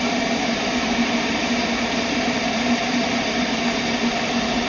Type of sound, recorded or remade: remade